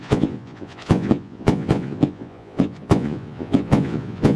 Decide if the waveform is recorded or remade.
remade